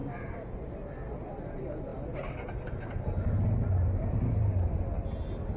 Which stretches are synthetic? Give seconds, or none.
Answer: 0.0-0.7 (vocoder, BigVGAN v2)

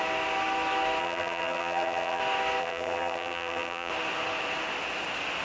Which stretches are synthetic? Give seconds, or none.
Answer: 1.0-2.2 (vocoder, BigVGAN v2); 2.6-3.9

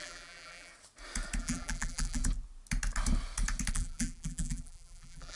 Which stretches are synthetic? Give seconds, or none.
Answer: 0.0-0.7 (vocoder, BigVGAN v2); 1.4-2.2; 3.7-5.4

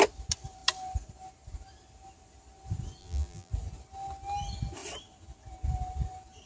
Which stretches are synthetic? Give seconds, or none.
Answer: 3.0-3.5 (vocoder, BigVGAN v2)

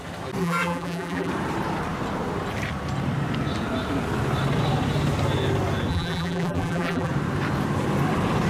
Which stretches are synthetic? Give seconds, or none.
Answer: 0.4-1.3 (vocoder, BigVGAN v2); 5.9-7.1

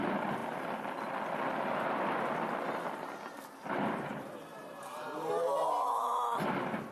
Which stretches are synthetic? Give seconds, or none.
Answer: 4.5-5.3 (vocoder, BigVGAN v2)

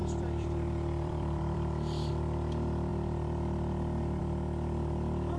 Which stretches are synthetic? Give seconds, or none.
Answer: 0.0-2.1 (vocoder, BigVGAN v2)

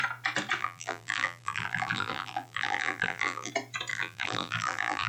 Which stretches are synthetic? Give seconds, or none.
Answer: 0.6-3.5 (vocoder, BigVGAN v2); 3.9-5.1